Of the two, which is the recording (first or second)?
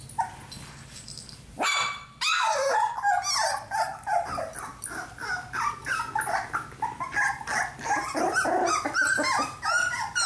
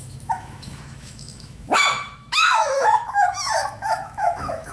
first